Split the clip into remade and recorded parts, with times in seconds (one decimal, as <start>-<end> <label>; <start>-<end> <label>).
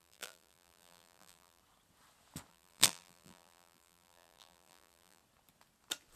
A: 0.0-1.6 remade; 1.6-2.5 recorded; 2.5-5.2 remade; 5.2-6.2 recorded